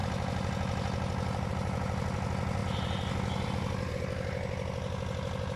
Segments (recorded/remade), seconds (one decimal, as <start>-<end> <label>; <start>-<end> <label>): 0.0-5.6 recorded